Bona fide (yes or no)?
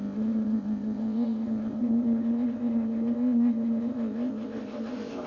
no